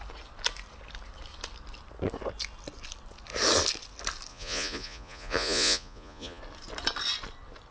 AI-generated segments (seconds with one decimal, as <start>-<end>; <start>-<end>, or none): 4.3-6.4